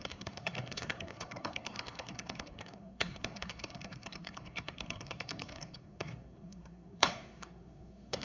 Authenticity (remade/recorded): remade